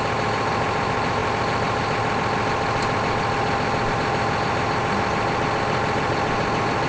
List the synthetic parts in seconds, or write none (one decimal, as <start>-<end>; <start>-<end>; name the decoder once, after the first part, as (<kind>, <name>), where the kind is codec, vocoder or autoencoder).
none